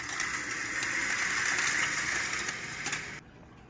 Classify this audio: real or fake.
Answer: real